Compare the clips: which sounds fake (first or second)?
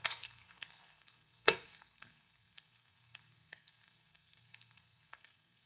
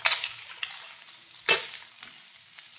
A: first